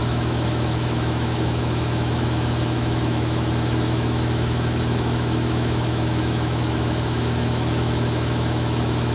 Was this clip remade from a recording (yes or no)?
yes